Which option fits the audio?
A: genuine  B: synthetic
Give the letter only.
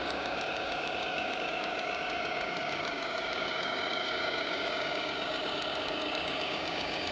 B